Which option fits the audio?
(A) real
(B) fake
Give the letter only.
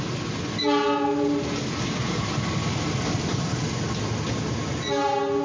A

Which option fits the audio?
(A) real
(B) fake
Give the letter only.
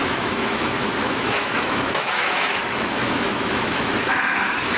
B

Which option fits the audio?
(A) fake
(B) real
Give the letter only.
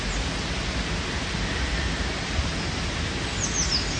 B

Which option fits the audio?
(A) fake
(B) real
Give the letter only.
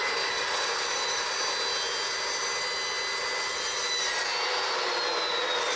B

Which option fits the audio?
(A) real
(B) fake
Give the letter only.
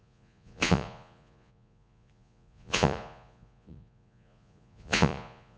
B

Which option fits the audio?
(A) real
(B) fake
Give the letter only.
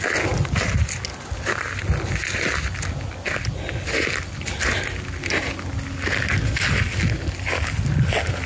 A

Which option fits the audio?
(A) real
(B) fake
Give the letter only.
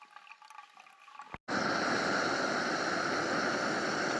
A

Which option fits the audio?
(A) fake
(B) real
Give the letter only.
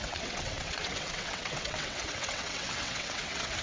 A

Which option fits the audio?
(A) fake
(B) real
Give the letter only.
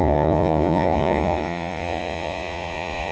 A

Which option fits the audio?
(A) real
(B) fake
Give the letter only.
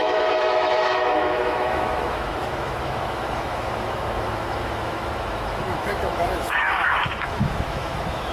B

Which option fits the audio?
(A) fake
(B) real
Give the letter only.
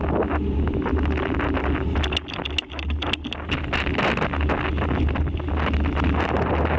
B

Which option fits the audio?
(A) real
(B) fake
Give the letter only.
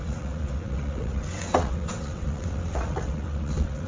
B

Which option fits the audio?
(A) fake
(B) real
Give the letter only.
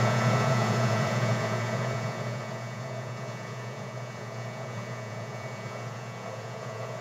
A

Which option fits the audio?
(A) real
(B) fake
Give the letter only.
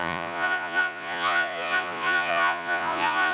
B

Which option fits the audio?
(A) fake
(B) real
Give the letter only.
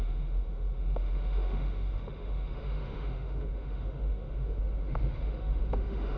A